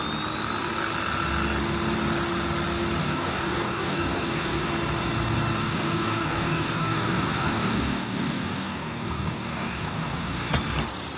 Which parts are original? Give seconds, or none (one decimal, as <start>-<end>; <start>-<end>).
0.0-3.0; 4.7-5.6; 10.5-11.2